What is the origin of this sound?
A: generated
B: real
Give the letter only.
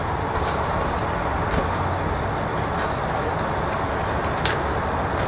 B